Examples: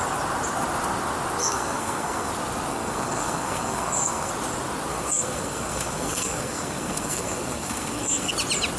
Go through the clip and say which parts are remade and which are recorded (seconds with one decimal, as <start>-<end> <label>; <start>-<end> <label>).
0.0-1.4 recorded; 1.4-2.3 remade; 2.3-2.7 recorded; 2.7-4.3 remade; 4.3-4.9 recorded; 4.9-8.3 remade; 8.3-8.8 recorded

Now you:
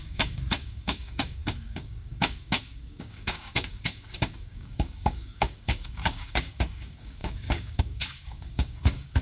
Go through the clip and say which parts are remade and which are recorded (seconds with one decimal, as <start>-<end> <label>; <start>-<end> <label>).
0.0-9.2 remade

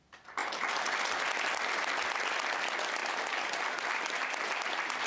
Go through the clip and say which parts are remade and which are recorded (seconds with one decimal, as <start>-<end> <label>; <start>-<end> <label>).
0.0-3.0 recorded; 3.0-3.6 remade; 3.6-5.1 recorded

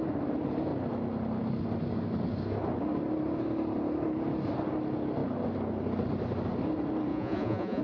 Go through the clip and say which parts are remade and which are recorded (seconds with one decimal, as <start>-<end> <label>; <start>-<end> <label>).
0.0-7.1 recorded; 7.1-7.8 remade